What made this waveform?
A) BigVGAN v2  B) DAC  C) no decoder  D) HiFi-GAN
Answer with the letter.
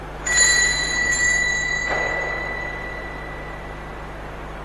A